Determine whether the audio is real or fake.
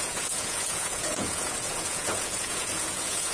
fake